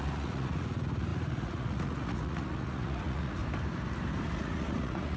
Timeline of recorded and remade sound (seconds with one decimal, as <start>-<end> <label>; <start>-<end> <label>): 0.0-3.4 remade; 3.4-4.3 recorded; 4.3-5.2 remade